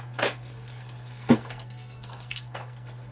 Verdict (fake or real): fake